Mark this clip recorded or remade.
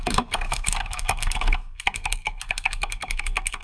remade